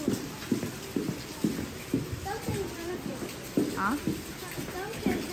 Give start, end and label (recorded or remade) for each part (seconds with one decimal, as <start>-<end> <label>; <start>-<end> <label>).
0.0-5.3 recorded